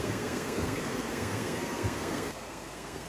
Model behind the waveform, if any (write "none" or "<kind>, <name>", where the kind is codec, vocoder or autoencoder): codec, SNAC